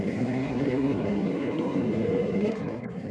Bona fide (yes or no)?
no